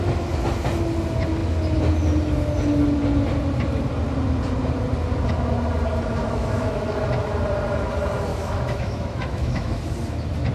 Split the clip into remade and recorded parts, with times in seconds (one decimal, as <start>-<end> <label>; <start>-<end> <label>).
0.0-6.2 recorded; 6.2-7.0 remade; 7.0-8.3 recorded; 8.3-9.8 remade; 9.8-10.5 recorded